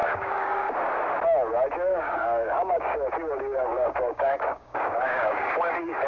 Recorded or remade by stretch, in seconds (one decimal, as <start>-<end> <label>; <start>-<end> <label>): 0.0-0.8 remade; 0.8-1.9 recorded; 1.9-3.1 remade; 3.1-3.7 recorded; 3.7-5.5 remade; 5.5-6.1 recorded